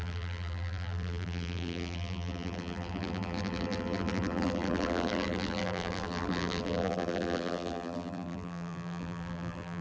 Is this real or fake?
fake